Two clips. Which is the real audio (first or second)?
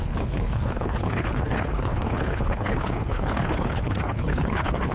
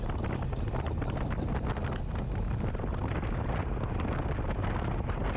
second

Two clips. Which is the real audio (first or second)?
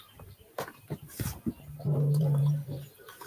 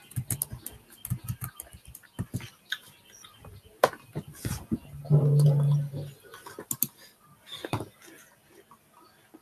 second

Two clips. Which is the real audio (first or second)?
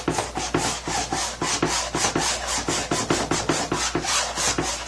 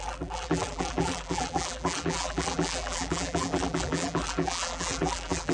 first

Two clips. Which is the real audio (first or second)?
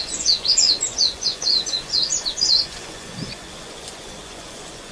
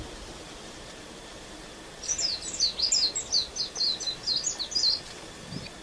second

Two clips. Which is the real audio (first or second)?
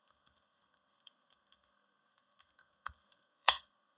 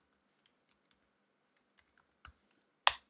second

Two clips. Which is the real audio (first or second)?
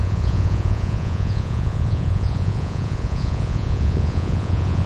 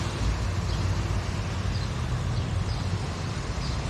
second